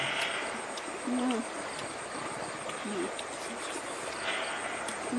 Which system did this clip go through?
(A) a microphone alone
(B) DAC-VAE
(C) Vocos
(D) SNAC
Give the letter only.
A